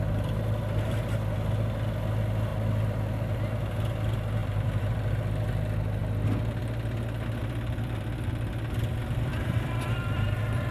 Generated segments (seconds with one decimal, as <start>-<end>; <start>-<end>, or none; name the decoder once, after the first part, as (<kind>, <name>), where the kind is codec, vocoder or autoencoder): 2.5-3.5 (vocoder, BigVGAN v2); 4.4-5.1; 7.4-10.7